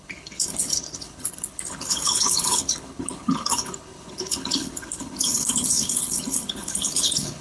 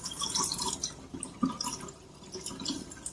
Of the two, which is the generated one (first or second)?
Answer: first